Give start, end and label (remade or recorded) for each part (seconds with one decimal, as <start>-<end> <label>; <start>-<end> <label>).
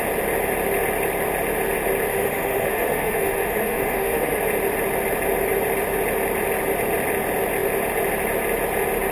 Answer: 0.0-2.1 recorded; 2.1-4.4 remade; 4.4-9.1 recorded